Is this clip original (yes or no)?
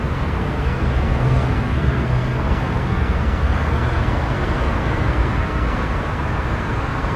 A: no